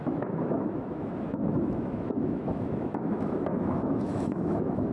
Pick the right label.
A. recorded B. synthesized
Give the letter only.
B